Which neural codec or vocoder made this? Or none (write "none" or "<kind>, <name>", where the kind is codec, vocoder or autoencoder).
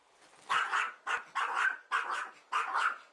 none